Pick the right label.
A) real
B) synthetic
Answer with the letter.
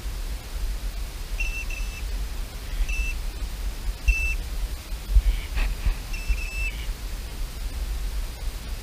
A